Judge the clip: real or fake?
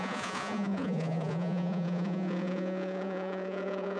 fake